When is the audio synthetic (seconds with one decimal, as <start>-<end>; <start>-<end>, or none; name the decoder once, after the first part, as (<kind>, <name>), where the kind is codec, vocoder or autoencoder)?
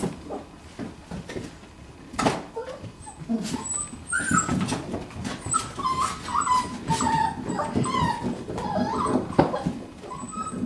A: none